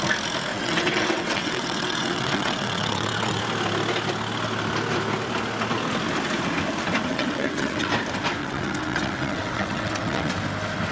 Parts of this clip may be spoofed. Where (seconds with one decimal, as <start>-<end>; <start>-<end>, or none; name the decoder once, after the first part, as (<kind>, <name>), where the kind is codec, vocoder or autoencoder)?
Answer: 0.5-3.4 (vocoder, WaveNeXt); 7.1-7.9; 8.4-10.3